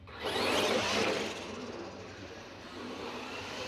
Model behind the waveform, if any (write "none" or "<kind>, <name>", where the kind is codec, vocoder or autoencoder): none